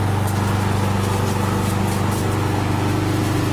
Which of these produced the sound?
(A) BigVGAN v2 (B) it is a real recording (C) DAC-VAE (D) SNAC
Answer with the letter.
B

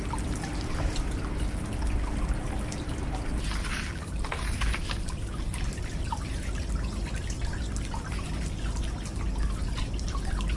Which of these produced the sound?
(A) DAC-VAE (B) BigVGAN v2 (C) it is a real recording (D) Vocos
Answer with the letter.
C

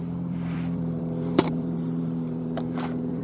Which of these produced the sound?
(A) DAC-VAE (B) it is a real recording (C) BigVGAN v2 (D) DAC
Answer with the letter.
C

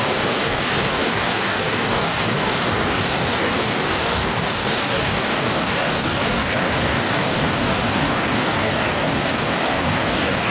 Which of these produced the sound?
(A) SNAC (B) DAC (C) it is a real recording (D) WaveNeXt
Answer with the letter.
B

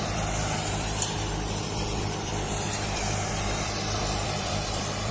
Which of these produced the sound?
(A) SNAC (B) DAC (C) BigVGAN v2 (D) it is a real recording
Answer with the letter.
C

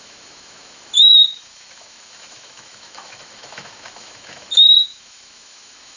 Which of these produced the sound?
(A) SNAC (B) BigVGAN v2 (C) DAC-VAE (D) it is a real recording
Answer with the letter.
C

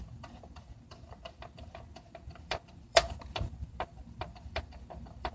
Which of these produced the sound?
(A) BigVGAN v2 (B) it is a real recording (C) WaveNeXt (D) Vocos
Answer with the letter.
A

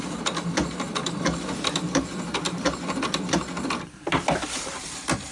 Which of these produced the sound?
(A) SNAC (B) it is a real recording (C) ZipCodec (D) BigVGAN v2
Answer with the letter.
D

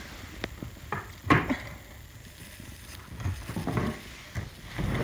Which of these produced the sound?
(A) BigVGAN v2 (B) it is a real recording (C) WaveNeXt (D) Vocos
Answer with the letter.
B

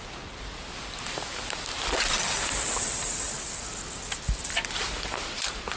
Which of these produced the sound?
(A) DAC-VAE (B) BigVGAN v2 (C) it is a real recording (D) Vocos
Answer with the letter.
C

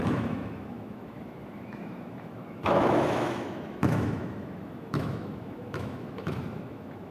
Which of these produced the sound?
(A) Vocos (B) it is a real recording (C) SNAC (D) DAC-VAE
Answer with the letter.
D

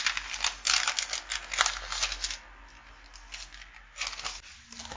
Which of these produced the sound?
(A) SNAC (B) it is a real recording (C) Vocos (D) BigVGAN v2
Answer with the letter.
B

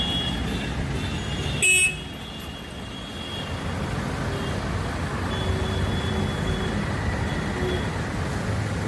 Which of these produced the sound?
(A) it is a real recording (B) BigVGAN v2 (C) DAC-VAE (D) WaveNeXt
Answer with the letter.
A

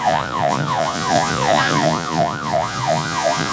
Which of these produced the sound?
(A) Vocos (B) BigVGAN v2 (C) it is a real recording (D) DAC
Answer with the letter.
A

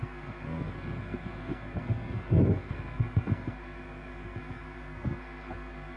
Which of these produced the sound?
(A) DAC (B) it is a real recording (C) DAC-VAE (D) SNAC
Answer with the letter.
D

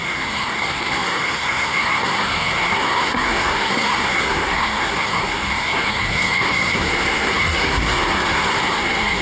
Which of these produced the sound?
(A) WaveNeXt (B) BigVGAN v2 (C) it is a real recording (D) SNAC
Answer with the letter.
D